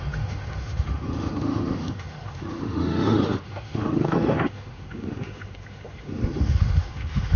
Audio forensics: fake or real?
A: fake